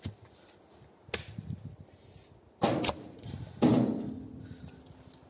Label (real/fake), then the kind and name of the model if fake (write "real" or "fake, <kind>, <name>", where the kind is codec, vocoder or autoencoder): real